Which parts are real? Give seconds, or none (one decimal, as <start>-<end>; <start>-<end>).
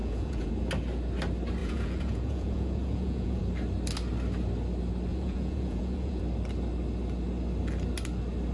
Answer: 0.5-1.6; 3.4-5.1; 6.2-8.5